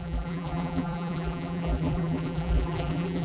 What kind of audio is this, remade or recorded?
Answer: remade